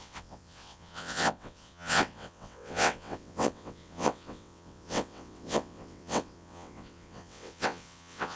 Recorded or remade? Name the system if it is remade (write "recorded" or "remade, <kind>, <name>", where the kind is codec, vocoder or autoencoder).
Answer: remade, vocoder, WaveNeXt